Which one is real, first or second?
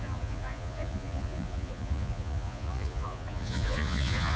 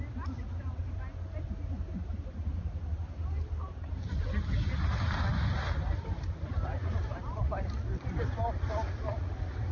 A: second